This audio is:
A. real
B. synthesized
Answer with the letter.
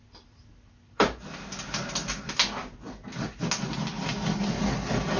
A